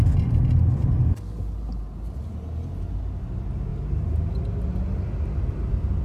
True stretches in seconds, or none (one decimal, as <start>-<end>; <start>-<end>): 0.0-6.0